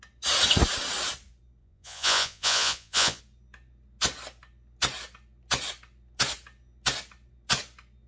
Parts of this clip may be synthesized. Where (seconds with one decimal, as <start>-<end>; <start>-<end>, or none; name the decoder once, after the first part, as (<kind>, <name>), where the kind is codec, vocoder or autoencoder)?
1.6-3.2 (vocoder, Vocos)